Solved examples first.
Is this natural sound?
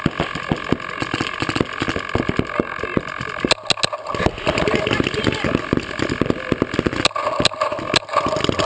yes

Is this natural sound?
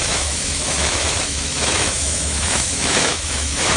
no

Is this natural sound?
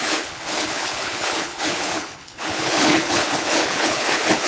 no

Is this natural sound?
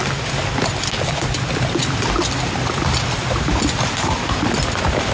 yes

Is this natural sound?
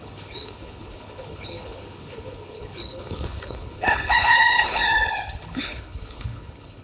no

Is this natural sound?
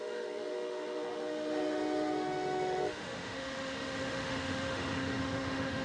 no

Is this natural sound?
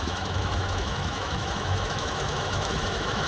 no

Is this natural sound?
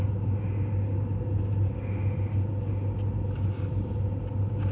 yes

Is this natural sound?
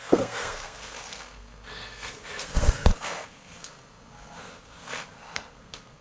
no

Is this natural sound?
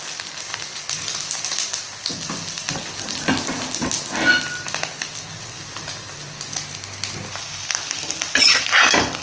yes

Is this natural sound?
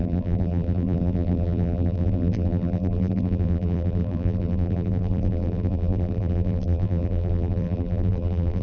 no